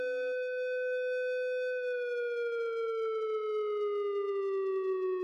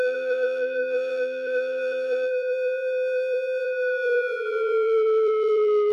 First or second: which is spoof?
second